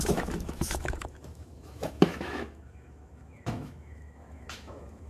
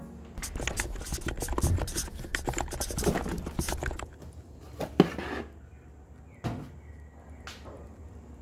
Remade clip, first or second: first